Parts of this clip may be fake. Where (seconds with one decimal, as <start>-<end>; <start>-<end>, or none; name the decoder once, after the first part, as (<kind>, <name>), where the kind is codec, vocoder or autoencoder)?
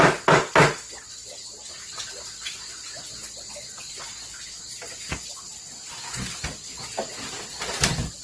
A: none